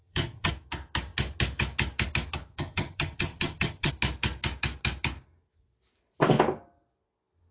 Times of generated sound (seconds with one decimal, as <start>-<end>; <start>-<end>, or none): 0.0-0.5; 2.5-3.9